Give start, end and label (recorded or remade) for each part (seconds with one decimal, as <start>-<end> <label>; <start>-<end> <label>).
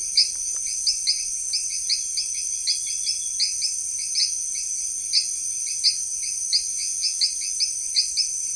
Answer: 0.0-6.7 recorded; 6.7-7.2 remade; 7.2-8.6 recorded